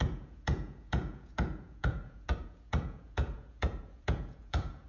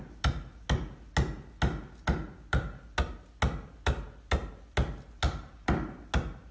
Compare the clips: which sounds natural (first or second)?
second